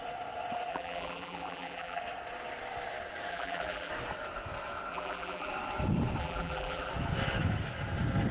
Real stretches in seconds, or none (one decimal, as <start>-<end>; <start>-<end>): 0.0-0.7; 2.0-3.3; 3.9-4.9; 5.5-6.2; 6.9-8.3